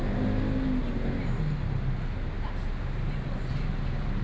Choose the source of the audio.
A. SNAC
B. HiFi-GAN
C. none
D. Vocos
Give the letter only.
C